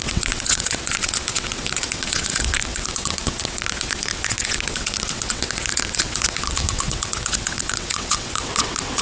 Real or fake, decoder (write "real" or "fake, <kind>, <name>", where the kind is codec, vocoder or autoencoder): fake, vocoder, WaveNeXt